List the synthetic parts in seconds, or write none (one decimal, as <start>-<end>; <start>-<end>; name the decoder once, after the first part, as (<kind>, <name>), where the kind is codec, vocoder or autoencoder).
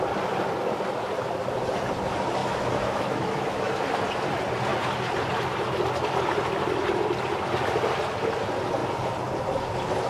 2.4-3.7 (autoencoder, DAC-VAE)